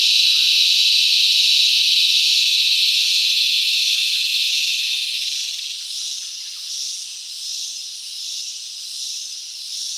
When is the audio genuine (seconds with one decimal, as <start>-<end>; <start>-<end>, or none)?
0.0-7.5